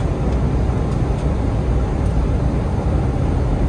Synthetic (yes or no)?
no